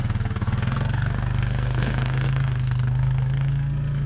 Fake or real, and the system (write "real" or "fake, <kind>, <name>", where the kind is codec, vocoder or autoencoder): fake, codec, SNAC